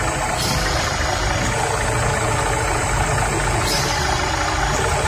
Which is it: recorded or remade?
recorded